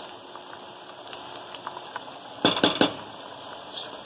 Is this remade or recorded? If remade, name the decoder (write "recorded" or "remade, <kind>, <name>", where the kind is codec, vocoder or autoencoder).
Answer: recorded